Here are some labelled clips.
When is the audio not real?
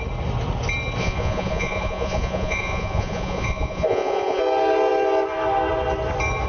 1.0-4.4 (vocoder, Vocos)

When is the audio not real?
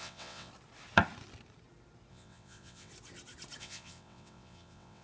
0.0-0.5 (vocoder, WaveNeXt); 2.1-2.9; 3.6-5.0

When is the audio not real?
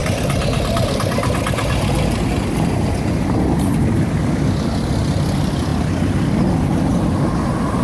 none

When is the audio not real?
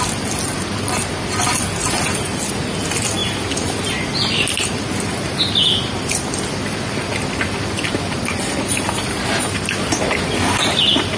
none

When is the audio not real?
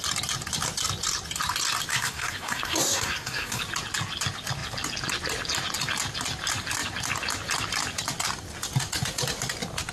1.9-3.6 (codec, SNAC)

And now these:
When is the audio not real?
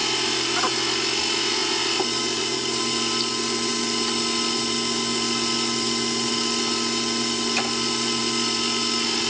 none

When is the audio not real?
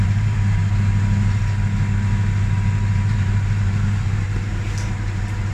0.0-0.6 (vocoder, BigVGAN v2); 2.9-5.5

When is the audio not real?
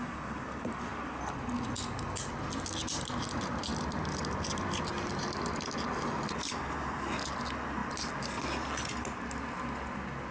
none